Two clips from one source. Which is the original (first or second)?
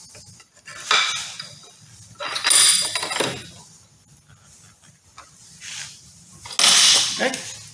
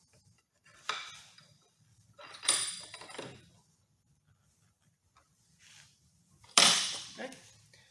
first